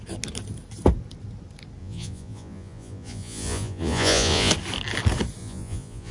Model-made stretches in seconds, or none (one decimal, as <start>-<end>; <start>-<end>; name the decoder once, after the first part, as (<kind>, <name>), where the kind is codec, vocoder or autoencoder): 1.8-4.5 (vocoder, Vocos); 5.4-6.1